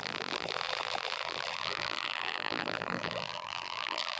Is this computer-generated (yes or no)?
yes